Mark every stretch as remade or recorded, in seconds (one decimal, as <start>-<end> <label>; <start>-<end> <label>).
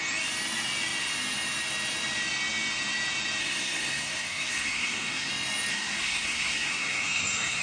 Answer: 0.0-3.4 recorded; 3.4-5.3 remade; 5.3-5.7 recorded; 5.7-7.6 remade